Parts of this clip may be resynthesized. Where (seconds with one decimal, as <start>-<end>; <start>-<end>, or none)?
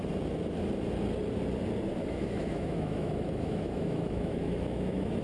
2.0-5.2